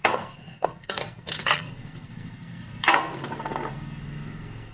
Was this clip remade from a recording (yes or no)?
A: yes